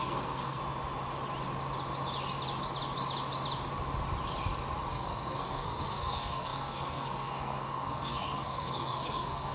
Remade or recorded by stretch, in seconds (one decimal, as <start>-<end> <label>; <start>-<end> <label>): 0.0-0.6 remade; 0.6-4.9 recorded; 4.9-9.5 remade